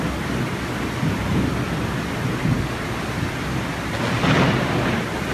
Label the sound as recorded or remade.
recorded